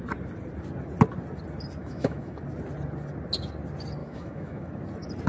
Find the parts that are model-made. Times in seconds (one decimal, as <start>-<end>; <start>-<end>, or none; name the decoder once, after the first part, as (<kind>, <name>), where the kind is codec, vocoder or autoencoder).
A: 1.8-2.4 (autoencoder, DAC-VAE); 4.0-4.7